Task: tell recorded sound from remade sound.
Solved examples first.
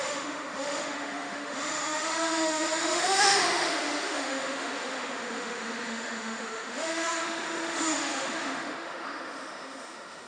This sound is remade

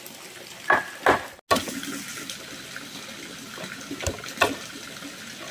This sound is recorded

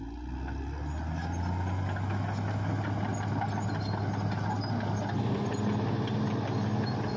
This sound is recorded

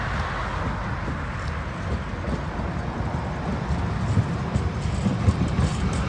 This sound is recorded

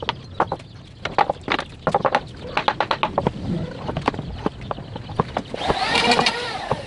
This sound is recorded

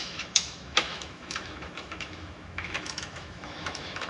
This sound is remade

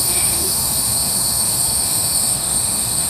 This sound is remade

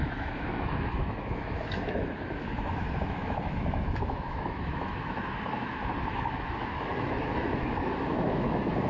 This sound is remade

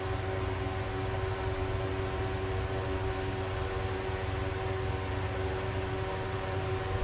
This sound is recorded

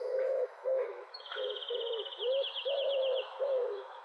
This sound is remade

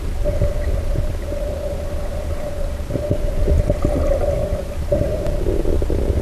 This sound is recorded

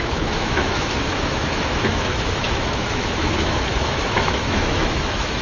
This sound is remade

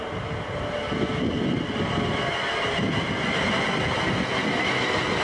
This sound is recorded